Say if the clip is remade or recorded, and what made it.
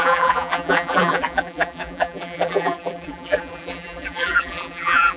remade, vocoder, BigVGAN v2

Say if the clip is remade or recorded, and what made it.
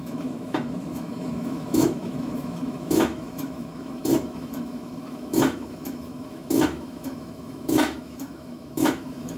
remade, autoencoder, DAC-VAE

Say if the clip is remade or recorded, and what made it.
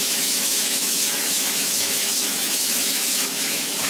remade, autoencoder, DAC-VAE